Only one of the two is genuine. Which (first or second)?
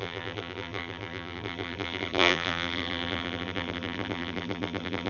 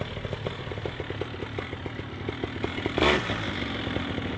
second